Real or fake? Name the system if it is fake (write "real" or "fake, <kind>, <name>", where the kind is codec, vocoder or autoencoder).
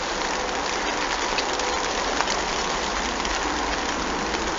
real